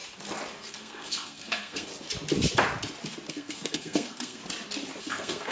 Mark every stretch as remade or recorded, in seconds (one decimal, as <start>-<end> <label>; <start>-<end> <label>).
0.0-0.6 recorded; 0.6-1.9 remade; 1.9-3.3 recorded; 3.3-4.4 remade; 4.4-5.0 recorded; 5.0-5.5 remade